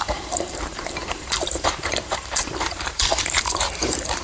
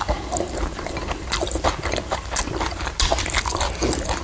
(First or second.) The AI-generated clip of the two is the first